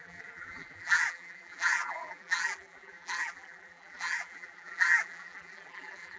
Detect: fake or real fake